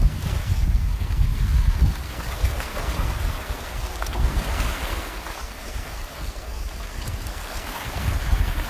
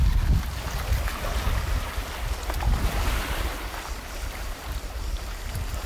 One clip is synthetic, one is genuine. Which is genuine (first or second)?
second